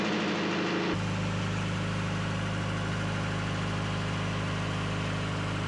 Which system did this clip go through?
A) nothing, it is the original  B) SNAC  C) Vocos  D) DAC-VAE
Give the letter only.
A